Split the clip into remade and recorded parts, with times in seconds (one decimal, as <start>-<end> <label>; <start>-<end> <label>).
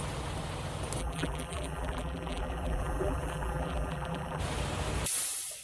0.0-1.0 recorded; 1.0-4.4 remade; 4.4-5.6 recorded